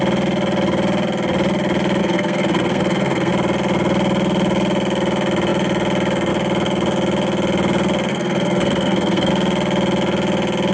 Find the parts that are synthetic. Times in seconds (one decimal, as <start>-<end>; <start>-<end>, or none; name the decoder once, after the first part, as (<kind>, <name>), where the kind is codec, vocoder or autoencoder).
2.0-3.3 (codec, SNAC); 8.1-9.3